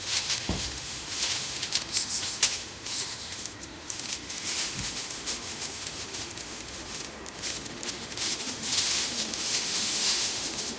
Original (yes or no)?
no